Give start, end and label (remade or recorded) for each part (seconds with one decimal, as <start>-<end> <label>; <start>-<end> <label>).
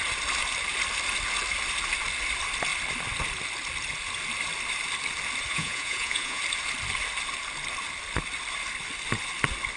0.0-5.5 recorded; 5.5-6.4 remade; 6.4-9.8 recorded